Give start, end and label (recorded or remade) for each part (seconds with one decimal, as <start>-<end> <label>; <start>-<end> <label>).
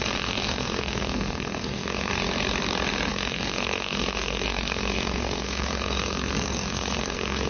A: 0.0-2.1 remade; 2.1-3.1 recorded; 3.1-7.5 remade